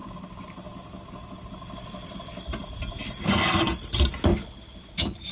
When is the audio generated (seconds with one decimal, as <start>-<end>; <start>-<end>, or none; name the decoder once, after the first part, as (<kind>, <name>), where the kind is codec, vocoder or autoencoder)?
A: none